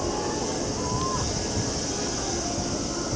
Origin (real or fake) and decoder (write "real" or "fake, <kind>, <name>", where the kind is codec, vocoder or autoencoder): real